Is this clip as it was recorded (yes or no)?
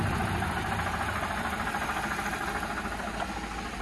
yes